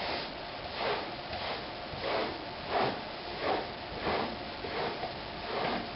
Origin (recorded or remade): recorded